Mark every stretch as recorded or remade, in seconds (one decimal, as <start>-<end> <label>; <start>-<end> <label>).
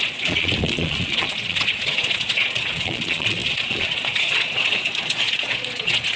0.0-6.2 remade